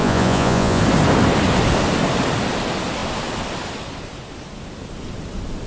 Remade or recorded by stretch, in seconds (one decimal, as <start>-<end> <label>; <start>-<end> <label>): 0.0-0.8 remade; 0.8-5.7 recorded